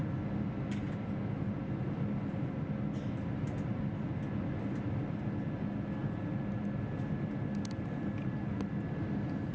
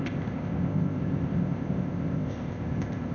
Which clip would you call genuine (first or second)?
first